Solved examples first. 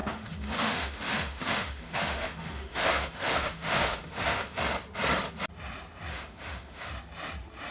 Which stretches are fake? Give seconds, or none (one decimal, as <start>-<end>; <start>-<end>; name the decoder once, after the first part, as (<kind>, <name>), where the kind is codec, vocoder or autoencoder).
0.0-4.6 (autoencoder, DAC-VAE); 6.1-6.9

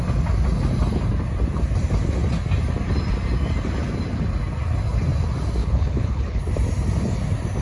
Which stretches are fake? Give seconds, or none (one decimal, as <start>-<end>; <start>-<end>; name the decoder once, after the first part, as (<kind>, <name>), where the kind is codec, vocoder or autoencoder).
5.6-6.4 (codec, HILCodec)

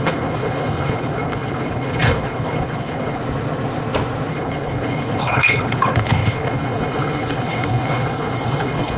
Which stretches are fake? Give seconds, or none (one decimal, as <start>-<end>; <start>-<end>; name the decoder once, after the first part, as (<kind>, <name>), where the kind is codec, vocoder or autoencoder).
0.0-3.2 (codec, HILCodec); 4.3-9.0

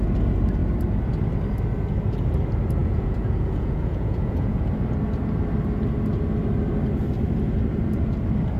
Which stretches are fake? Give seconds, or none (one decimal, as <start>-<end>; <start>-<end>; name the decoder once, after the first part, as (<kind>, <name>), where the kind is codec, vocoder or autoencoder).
2.8-4.7 (vocoder, Vocos)

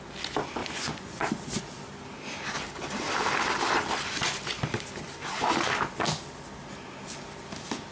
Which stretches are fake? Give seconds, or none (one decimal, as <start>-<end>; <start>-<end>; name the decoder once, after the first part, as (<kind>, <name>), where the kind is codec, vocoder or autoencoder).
0.6-1.3 (vocoder, Vocos)